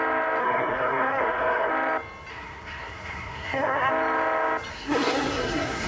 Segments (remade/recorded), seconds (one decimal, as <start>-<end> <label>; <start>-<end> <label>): 0.0-0.4 recorded; 0.4-1.7 remade; 1.7-2.3 recorded; 2.3-3.9 remade; 3.9-4.7 recorded; 4.7-5.9 remade